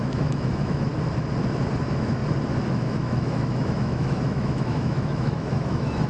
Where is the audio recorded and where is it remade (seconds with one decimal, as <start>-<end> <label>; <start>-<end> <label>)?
0.0-0.9 remade; 0.9-1.8 recorded; 1.8-2.2 remade; 2.2-2.7 recorded; 2.7-6.1 remade